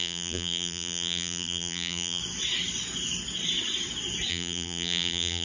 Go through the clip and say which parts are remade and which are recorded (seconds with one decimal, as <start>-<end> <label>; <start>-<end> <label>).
0.0-2.2 remade; 2.2-4.3 recorded; 4.3-5.4 remade